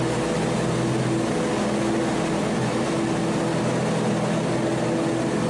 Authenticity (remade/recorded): recorded